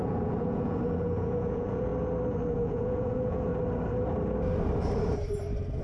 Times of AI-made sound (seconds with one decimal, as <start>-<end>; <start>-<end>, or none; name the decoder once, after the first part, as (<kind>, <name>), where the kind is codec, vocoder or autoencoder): 0.0-1.9 (vocoder, Vocos); 2.5-3.5